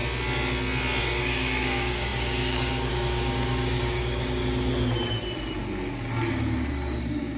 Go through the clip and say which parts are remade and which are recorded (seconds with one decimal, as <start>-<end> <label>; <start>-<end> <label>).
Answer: 0.0-1.0 recorded; 1.0-4.4 remade; 4.4-6.3 recorded; 6.3-7.4 remade